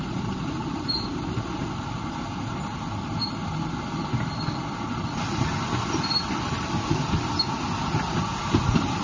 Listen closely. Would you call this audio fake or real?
real